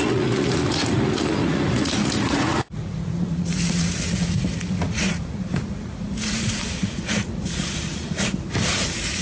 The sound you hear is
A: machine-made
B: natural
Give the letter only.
A